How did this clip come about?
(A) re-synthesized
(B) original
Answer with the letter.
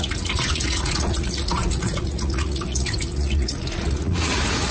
A